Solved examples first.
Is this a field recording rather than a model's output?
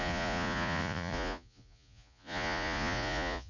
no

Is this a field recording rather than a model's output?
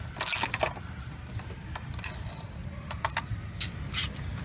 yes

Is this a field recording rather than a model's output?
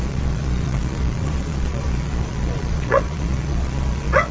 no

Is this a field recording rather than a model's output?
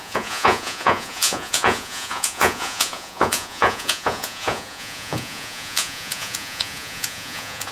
no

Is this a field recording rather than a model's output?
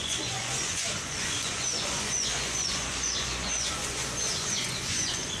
no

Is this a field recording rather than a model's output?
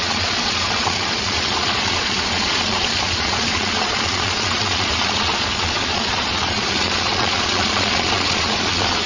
no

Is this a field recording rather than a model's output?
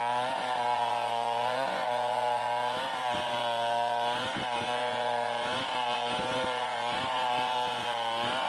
no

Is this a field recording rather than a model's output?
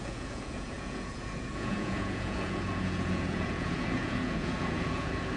no